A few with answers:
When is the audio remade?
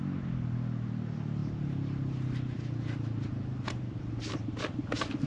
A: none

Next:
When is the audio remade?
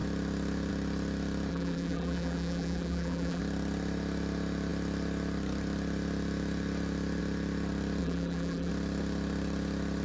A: 1.5-3.4 (vocoder, BigVGAN v2); 8.0-8.7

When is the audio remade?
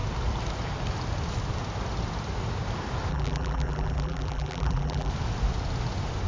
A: 3.1-5.1 (vocoder, BigVGAN v2)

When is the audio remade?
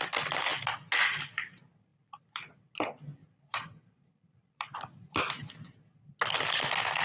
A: 1.9-5.2 (vocoder, BigVGAN v2)